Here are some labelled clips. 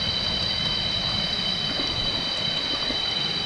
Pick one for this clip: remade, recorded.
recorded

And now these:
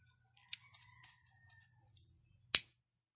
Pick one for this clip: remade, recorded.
recorded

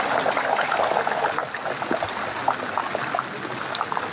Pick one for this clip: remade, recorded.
recorded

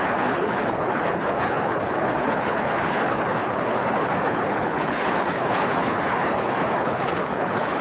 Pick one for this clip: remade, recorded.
remade